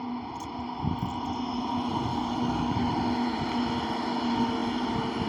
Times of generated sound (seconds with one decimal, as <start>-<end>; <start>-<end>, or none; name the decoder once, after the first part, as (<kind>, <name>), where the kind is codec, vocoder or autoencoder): 2.1-2.9 (codec, DAC)